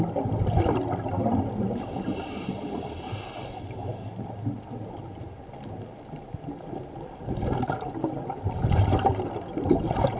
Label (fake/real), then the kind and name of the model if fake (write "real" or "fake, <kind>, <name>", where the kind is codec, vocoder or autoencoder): real